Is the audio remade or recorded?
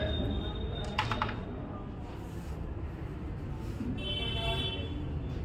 recorded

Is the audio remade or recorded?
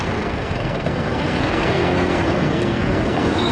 remade